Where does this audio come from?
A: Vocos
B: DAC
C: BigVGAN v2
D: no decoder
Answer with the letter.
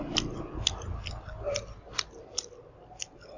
D